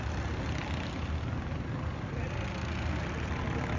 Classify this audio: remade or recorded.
recorded